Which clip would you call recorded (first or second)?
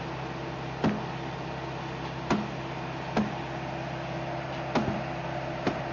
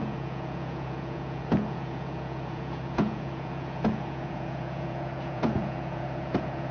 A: first